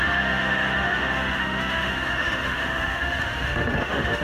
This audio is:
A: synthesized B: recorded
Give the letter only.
A